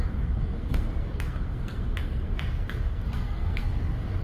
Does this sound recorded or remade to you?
remade